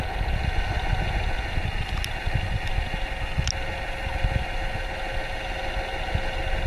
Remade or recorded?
recorded